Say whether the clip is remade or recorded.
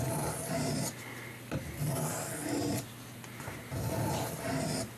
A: recorded